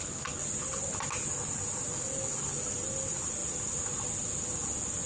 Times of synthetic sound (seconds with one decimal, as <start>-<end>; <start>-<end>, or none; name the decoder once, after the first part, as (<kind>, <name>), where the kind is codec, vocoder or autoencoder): none